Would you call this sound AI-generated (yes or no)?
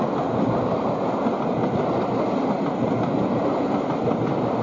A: no